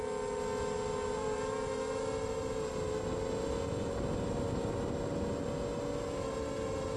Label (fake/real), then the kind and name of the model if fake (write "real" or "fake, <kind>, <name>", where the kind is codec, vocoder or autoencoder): real